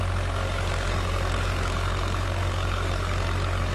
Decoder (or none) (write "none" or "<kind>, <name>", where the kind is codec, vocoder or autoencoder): codec, DAC